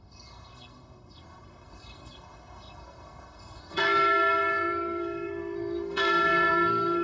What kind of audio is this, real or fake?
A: fake